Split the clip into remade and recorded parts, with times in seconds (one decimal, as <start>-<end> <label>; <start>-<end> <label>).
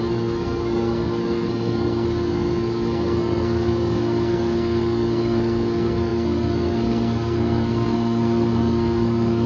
0.0-9.5 remade